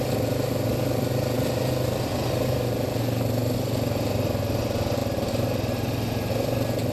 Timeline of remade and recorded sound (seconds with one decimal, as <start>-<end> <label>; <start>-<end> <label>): 0.0-6.9 recorded